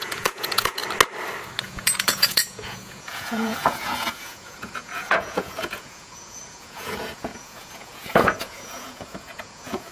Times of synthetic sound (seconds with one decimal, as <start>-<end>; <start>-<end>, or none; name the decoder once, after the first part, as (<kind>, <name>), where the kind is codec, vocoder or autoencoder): 0.0-0.8 (vocoder, Vocos); 1.6-9.9